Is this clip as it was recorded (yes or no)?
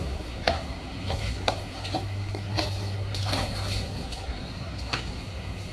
no